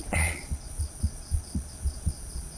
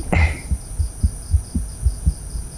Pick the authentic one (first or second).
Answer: second